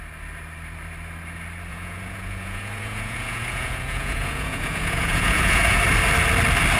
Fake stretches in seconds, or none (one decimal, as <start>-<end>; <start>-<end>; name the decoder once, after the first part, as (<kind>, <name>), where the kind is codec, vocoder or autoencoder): 1.7-5.8 (vocoder, Vocos)